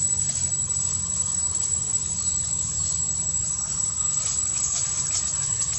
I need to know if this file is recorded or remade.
remade